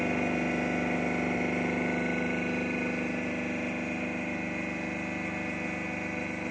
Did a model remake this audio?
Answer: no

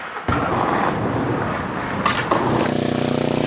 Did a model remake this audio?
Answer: no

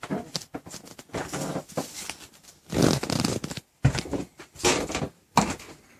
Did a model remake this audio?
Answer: no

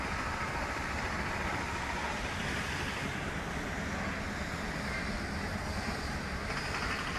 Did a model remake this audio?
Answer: no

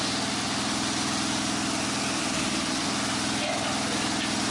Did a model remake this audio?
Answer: no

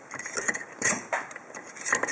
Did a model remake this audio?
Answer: yes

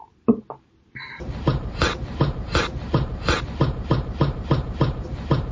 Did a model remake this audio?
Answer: yes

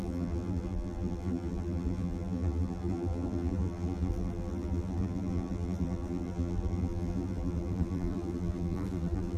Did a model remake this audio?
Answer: yes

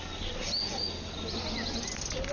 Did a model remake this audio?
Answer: no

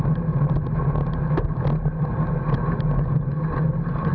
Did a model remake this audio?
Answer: no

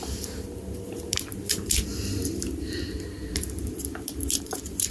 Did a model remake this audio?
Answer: yes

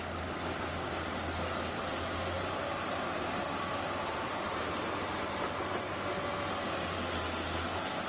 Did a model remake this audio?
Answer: no